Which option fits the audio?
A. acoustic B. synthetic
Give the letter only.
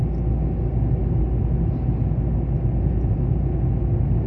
A